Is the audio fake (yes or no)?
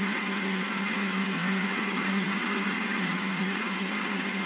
yes